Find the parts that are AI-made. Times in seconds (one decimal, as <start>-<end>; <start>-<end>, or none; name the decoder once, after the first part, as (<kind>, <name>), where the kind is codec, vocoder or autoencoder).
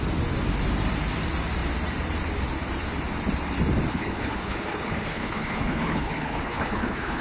3.9-7.2 (codec, HILCodec)